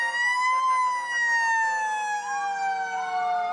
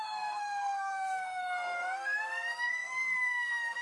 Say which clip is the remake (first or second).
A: second